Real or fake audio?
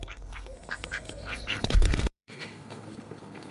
fake